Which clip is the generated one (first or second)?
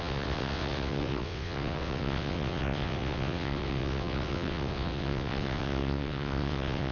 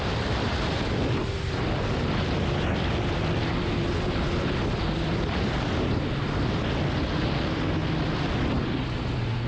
first